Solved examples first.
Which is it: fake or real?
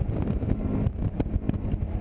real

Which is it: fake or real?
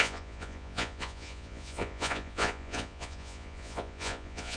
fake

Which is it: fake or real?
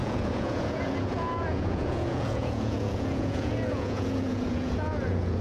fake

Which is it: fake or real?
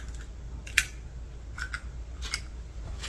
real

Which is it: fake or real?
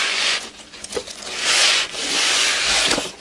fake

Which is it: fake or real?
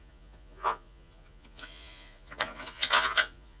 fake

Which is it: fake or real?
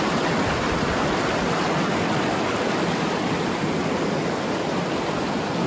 real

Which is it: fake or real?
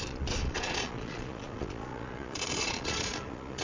fake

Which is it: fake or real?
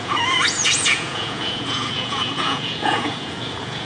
fake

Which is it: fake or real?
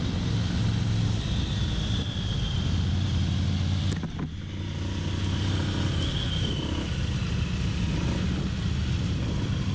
real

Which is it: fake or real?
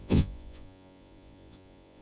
fake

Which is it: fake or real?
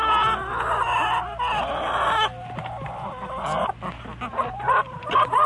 real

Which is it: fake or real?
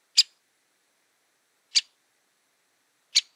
real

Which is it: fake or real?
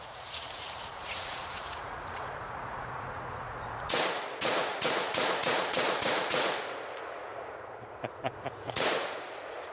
fake